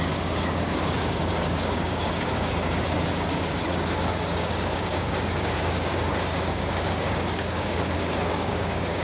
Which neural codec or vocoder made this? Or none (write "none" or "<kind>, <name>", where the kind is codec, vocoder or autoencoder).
codec, DAC